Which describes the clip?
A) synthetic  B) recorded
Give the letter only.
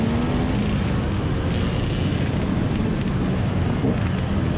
B